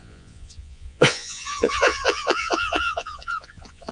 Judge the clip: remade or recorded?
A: remade